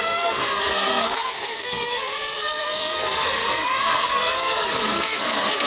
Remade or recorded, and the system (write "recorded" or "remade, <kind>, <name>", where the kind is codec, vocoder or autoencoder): remade, codec, SNAC